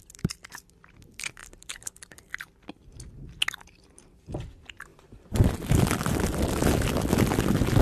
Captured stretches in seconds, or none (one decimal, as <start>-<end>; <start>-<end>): 0.0-1.4; 2.4-4.9; 5.8-7.8